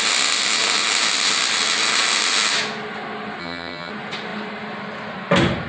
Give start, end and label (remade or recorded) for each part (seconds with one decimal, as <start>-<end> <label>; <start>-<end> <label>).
0.0-3.4 recorded; 3.4-3.9 remade; 3.9-5.7 recorded